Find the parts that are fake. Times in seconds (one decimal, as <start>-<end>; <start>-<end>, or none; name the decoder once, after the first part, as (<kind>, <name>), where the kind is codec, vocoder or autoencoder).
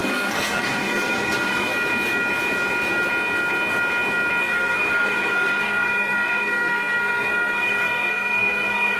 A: 0.0-1.7 (codec, SNAC); 4.4-9.0